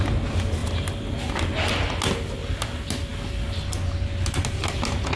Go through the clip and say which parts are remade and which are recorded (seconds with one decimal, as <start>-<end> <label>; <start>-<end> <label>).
0.0-5.2 recorded